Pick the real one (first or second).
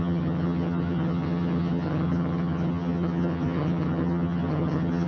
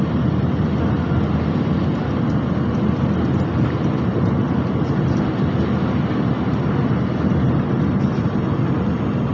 second